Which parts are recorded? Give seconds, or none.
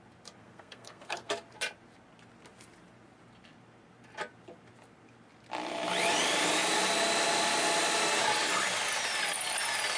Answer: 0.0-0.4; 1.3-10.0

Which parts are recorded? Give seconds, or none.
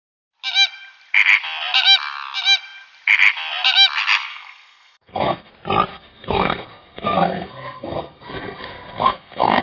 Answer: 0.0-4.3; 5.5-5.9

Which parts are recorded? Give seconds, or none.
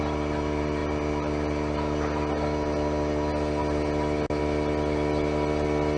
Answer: 0.0-6.0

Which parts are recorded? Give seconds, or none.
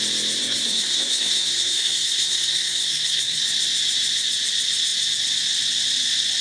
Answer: 0.0-0.4; 3.4-6.4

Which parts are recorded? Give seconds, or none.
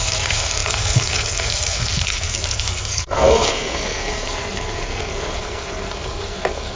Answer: none